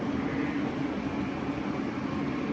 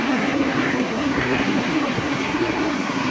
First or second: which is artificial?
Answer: second